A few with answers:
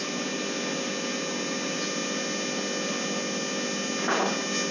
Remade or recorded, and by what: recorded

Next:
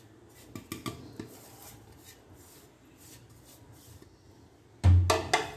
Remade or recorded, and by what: recorded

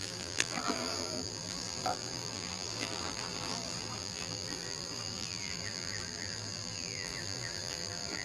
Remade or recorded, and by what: remade, vocoder, BigVGAN v2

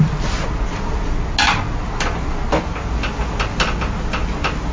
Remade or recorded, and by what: recorded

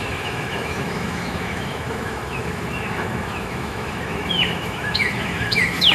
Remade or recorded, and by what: remade, autoencoder, DAC-VAE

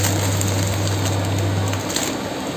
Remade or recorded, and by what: recorded